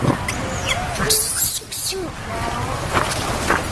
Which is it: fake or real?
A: real